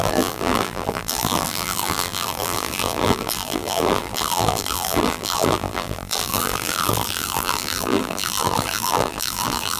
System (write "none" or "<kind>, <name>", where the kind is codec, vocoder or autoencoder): vocoder, BigVGAN v2